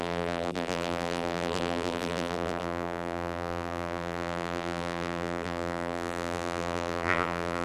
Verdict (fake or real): fake